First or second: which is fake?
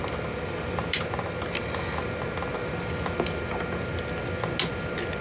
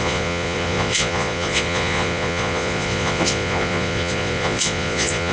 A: second